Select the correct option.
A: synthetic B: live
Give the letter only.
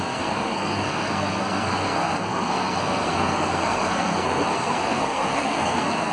A